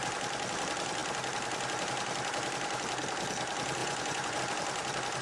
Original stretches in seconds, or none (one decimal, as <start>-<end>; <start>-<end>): 0.0-3.8; 4.4-5.2